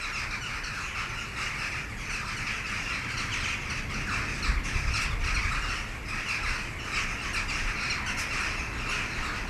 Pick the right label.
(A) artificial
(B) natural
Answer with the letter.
B